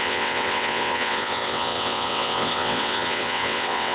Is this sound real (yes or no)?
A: no